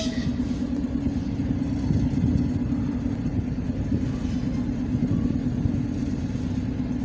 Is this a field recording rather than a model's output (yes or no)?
yes